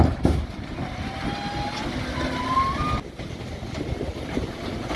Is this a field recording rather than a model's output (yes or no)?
yes